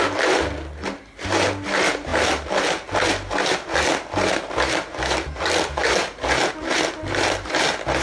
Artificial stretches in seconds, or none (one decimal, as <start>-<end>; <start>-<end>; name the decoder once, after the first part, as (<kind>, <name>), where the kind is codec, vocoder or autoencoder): none